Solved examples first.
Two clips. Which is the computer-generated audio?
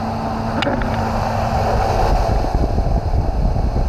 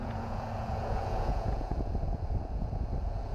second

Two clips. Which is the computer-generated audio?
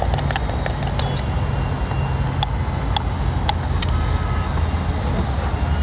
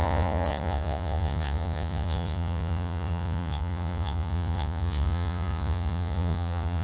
second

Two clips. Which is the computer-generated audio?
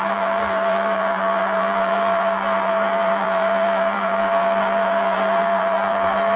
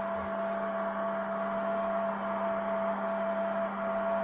first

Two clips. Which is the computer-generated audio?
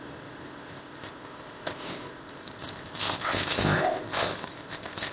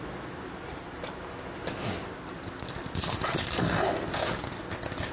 first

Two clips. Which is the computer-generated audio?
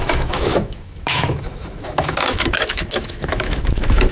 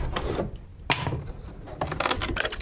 first